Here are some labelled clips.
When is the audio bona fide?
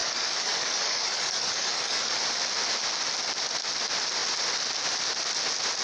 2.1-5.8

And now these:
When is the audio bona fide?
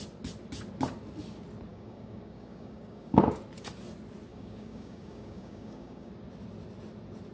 0.0-1.7; 3.2-4.3; 6.1-7.3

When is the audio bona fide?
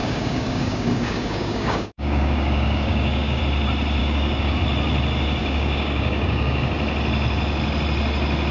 3.4-4.0; 4.6-5.4; 6.7-8.5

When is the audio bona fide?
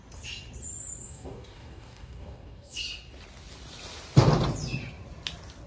0.0-1.0; 2.8-5.7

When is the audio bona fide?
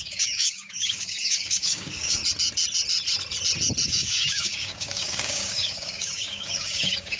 2.2-3.9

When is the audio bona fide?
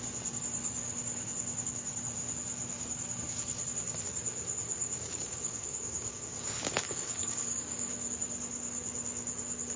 0.0-4.8; 7.9-9.8